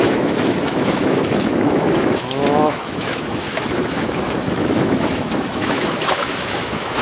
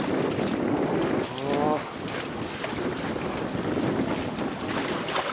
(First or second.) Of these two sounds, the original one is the second